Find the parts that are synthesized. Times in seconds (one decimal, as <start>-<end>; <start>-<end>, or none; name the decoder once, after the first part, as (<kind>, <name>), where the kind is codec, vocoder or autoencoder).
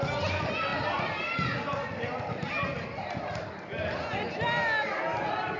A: none